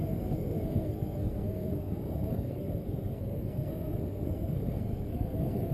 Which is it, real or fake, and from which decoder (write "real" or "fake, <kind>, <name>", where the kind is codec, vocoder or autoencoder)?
fake, codec, SNAC